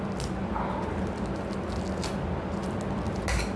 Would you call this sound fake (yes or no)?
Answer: no